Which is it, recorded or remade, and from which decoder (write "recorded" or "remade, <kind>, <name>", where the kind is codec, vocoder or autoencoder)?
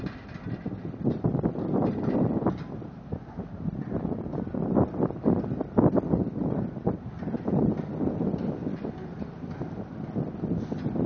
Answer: recorded